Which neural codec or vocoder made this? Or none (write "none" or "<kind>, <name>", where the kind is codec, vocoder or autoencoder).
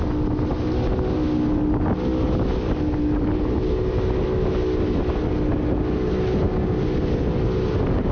none